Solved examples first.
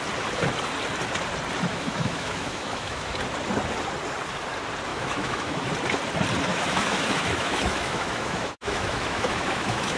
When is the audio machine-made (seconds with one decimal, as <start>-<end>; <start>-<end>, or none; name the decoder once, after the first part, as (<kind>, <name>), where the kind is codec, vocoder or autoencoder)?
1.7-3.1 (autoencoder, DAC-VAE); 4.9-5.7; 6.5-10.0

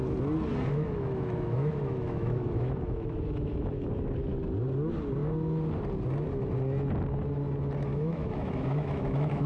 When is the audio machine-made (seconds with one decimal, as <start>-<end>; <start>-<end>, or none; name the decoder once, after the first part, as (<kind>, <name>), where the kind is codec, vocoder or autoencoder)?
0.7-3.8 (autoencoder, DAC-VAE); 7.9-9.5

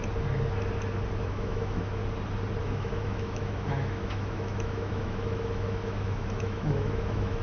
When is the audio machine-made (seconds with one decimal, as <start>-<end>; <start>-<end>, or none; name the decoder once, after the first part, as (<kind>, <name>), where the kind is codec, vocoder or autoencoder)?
1.2-2.0 (autoencoder, DAC-VAE); 2.6-7.4

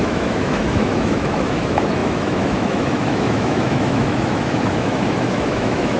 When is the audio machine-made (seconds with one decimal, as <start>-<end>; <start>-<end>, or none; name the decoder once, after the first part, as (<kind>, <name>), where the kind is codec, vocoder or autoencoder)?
0.0-6.0 (autoencoder, DAC-VAE)